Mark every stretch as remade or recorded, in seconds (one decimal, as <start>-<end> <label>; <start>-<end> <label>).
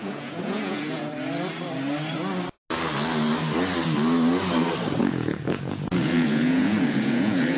0.0-1.1 remade; 1.1-5.0 recorded; 5.0-7.6 remade